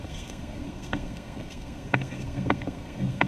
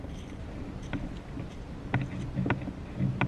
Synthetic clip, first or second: first